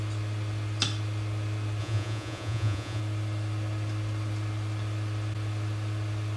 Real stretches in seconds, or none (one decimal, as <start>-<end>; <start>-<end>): 0.0-1.8; 3.0-6.4